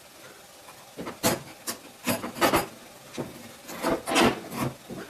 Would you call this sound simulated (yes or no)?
no